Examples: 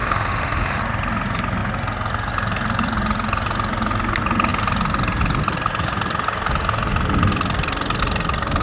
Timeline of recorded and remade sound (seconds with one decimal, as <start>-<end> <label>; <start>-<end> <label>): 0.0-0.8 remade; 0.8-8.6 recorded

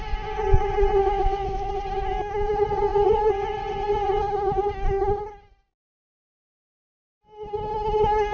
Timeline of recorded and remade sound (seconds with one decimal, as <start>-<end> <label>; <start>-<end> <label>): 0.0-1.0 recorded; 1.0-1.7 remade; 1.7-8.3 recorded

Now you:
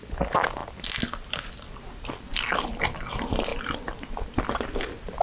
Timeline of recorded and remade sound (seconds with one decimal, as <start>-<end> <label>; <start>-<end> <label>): 0.0-5.2 recorded

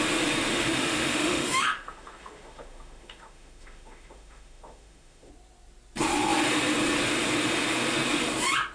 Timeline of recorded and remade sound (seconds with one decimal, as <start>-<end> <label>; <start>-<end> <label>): 0.0-0.5 recorded; 0.5-5.3 remade; 5.3-8.7 recorded

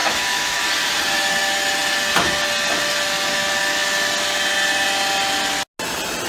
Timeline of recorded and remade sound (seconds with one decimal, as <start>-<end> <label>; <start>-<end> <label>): 0.0-0.6 remade; 0.6-6.3 recorded